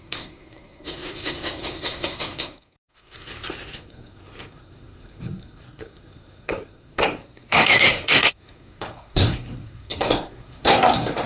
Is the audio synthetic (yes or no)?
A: yes